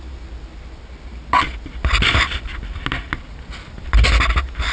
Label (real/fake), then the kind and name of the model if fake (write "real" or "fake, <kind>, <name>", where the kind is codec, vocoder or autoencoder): real